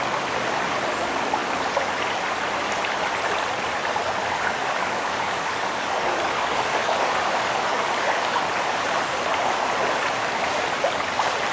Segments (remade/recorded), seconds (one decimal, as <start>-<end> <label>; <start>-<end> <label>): 0.0-4.2 recorded; 4.2-8.5 remade; 8.5-11.5 recorded